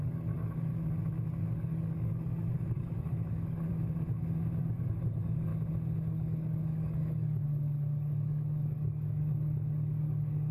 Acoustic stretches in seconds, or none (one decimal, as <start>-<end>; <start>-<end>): 0.7-1.4; 3.7-4.6; 5.5-6.1